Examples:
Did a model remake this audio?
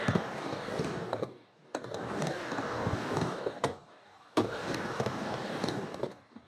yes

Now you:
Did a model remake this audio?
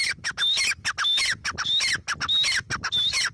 no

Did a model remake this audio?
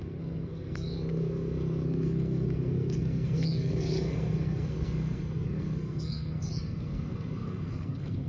yes